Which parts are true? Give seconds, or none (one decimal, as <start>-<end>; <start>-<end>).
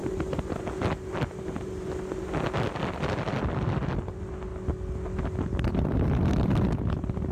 0.0-3.4; 4.5-5.7